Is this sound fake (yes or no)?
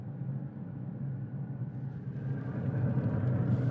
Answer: no